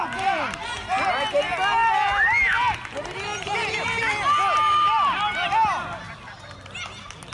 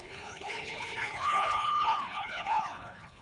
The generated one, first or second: second